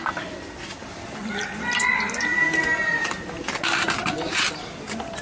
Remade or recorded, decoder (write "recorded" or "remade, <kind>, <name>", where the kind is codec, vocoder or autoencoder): recorded